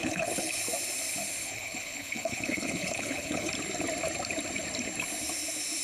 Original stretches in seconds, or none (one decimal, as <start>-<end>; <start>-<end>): 0.6-1.4; 3.5-5.8